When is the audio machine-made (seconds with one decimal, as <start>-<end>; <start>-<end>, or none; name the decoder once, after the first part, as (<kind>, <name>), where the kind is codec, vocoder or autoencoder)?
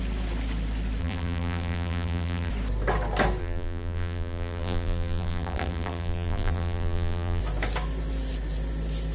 1.0-2.5 (vocoder, BigVGAN v2); 3.4-7.4